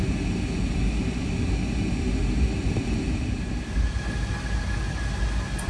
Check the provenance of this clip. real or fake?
real